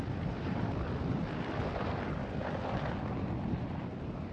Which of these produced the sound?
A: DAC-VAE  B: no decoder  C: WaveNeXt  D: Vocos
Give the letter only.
B